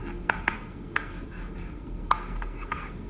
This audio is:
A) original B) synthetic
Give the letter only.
B